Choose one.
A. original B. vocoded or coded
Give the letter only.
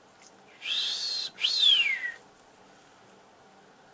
A